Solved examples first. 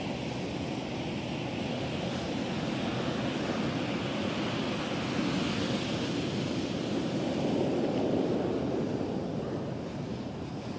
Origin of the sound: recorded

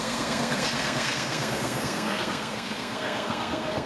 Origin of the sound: remade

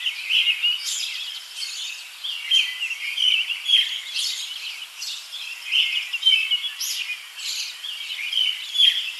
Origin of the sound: recorded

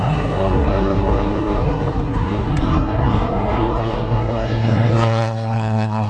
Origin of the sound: remade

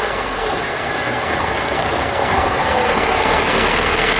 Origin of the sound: remade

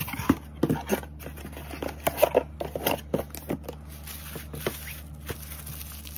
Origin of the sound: recorded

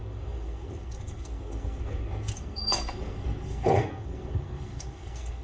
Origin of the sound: remade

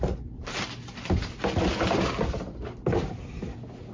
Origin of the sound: recorded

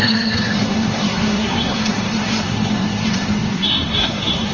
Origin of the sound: remade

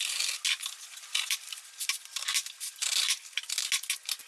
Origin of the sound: recorded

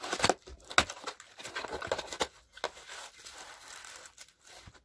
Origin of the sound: recorded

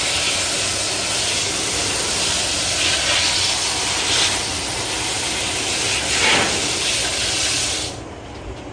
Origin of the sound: recorded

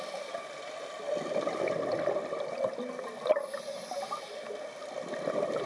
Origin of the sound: recorded